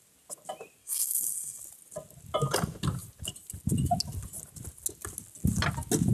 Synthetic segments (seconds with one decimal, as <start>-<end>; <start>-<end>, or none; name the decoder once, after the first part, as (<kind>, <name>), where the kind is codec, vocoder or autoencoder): 0.8-1.6 (codec, SNAC)